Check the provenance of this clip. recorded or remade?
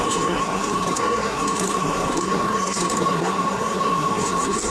remade